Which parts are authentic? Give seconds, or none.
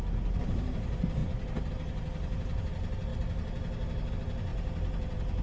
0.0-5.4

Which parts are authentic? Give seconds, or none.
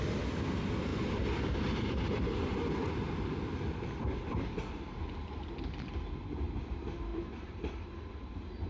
0.0-0.9; 2.0-7.1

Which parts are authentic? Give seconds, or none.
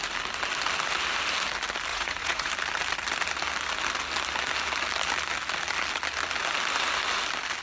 0.0-1.9; 2.5-7.6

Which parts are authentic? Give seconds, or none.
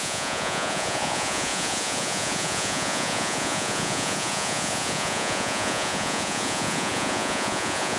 none